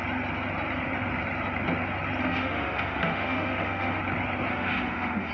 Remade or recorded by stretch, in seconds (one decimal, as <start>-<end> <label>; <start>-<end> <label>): 0.0-2.2 recorded; 2.2-4.0 remade; 4.0-4.5 recorded; 4.5-5.3 remade